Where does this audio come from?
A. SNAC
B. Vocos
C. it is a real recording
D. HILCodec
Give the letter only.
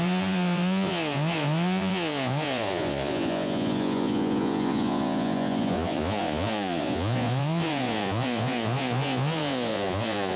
B